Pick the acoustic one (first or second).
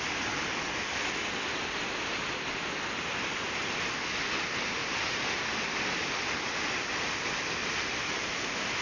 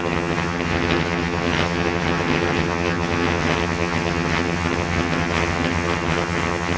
first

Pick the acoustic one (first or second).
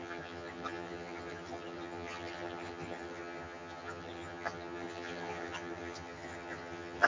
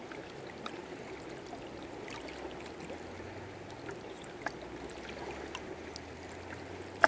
second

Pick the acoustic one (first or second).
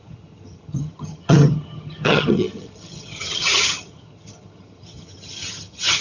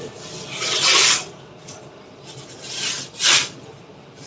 second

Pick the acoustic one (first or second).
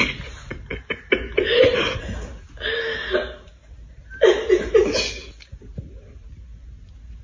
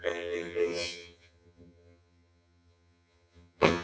first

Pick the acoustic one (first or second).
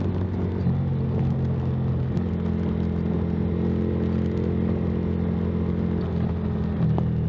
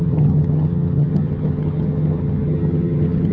first